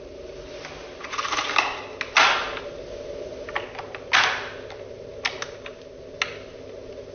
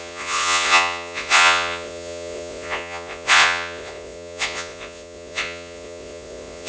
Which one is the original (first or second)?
first